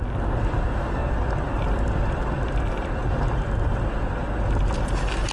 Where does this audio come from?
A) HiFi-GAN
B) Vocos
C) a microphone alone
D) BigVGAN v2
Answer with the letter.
C